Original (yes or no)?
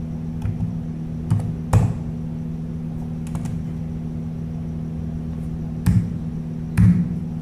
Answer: yes